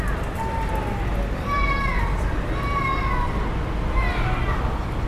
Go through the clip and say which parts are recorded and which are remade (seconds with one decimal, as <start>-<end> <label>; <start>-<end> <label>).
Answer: 0.0-5.1 recorded